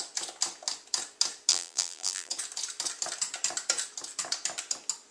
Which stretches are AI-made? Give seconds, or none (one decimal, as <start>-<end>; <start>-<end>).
1.5-2.3